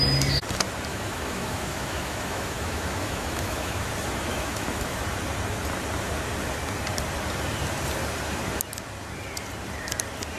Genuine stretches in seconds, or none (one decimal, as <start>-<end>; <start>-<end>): 0.0-0.9; 3.9-4.3; 5.0-10.4